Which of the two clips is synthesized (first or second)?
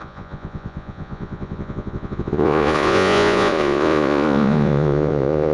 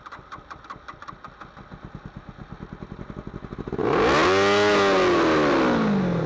first